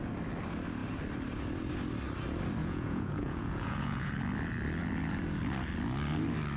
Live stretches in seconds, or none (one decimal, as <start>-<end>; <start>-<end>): 0.0-2.6; 4.2-6.6